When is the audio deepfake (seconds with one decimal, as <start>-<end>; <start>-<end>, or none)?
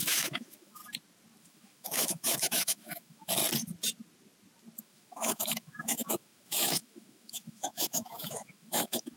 0.0-0.8; 1.4-3.4; 4.8-9.2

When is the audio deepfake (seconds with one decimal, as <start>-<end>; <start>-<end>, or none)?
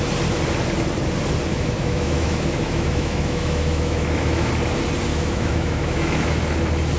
1.5-4.5; 5.1-6.4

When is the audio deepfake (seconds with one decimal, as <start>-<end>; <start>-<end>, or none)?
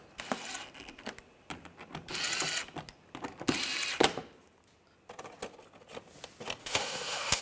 6.6-7.4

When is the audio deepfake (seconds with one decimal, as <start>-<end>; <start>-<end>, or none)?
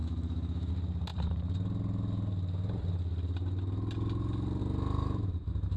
0.0-0.7; 5.0-5.8